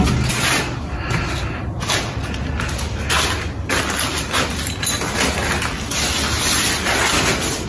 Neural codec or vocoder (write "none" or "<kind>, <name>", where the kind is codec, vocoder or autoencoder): none